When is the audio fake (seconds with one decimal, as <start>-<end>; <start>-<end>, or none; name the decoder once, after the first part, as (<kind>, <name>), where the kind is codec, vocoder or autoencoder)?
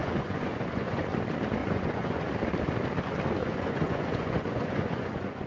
0.0-1.0 (vocoder, Vocos); 1.6-2.3; 3.4-5.5